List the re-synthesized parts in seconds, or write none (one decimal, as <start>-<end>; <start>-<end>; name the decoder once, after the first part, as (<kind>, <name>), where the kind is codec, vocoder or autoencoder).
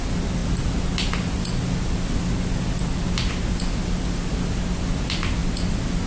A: none